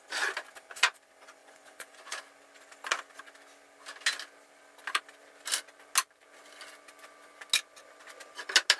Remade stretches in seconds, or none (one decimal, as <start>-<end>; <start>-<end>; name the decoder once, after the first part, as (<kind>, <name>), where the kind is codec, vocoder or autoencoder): 1.4-2.2 (vocoder, Vocos)